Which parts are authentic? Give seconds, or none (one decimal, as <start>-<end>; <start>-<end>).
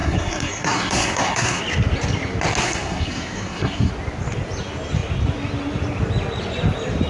1.6-2.6; 3.9-7.1